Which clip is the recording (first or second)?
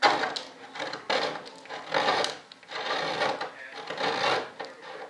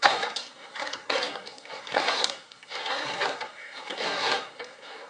first